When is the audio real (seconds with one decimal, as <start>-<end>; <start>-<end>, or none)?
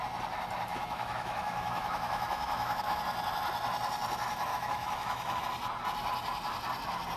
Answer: 0.0-0.7; 3.0-4.5; 5.4-7.2